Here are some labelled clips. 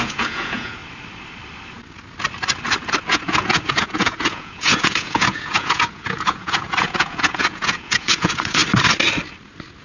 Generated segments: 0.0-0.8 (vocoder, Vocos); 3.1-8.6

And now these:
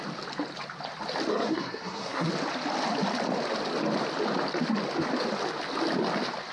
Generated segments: 1.3-2.3 (codec, SNAC)

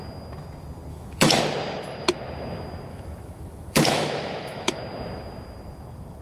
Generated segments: 0.9-1.4 (autoencoder, DAC-VAE); 2.9-4.8

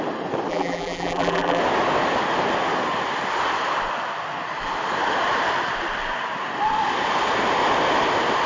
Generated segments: 0.5-1.6 (vocoder, BigVGAN v2)

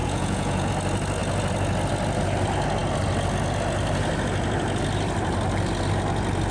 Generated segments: 0.0-0.7 (vocoder, Vocos)

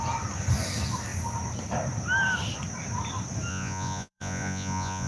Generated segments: 3.5-5.1 (vocoder, Vocos)

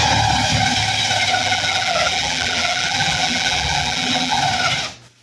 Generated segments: 1.4-4.4 (vocoder, BigVGAN v2)

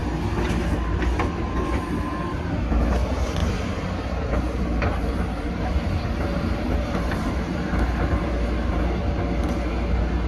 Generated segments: 3.4-8.5 (vocoder, BigVGAN v2)